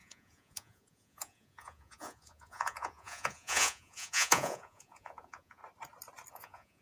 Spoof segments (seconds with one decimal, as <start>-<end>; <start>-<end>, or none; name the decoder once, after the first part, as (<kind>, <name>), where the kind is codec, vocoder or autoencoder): 0.0-5.6 (vocoder, Vocos); 6.3-6.8